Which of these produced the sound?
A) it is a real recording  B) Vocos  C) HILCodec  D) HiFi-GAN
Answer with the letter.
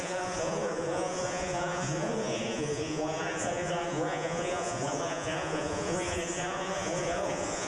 B